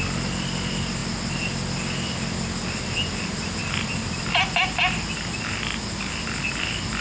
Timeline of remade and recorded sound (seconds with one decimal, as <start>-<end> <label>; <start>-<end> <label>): 0.0-7.0 recorded